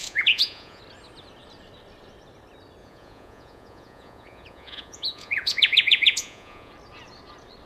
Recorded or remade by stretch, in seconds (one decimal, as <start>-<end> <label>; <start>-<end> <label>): 0.0-0.8 remade; 0.8-2.8 recorded; 2.8-6.7 remade; 6.7-7.7 recorded